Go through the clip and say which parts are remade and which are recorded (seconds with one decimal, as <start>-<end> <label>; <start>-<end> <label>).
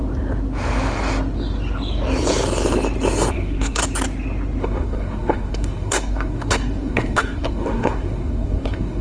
0.0-3.3 recorded; 3.3-3.8 remade; 3.8-4.6 recorded; 4.6-9.0 remade